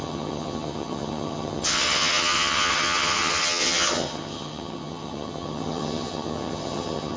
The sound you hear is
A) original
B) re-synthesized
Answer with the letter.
B